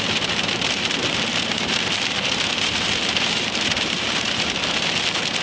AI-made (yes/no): yes